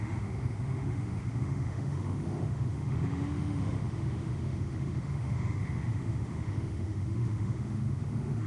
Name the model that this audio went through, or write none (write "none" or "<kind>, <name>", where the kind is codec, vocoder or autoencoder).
autoencoder, DAC-VAE